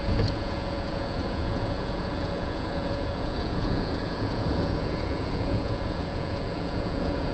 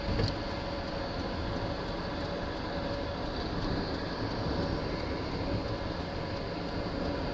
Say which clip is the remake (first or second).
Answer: first